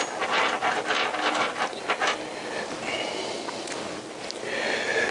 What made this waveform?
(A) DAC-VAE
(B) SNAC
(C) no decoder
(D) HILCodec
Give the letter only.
C